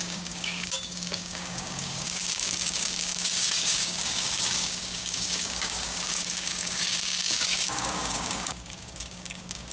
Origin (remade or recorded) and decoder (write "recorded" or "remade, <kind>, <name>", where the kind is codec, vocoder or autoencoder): remade, codec, DAC